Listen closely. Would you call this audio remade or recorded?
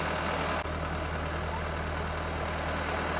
recorded